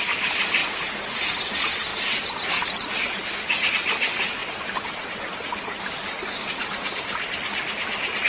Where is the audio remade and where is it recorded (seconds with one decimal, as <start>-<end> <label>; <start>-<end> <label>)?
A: 0.0-8.3 recorded